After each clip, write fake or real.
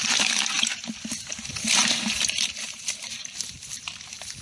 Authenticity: fake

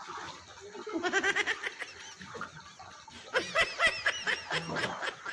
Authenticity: real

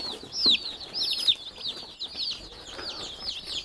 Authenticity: real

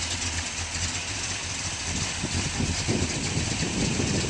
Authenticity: fake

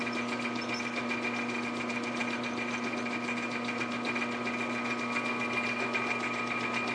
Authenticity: real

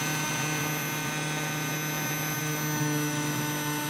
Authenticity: real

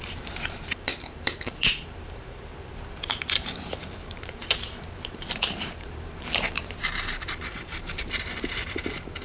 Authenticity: fake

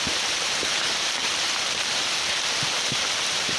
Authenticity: fake